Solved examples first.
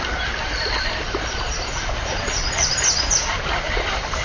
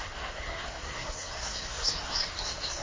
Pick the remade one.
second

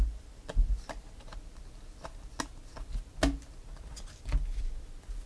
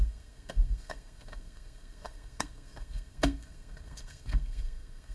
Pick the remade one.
second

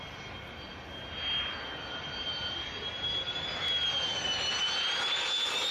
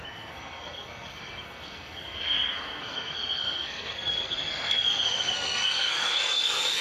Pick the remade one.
second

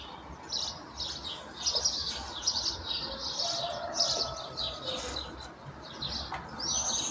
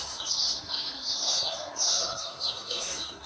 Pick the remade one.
second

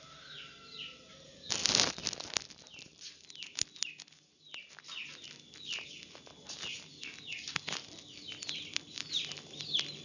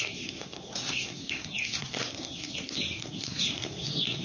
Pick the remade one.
second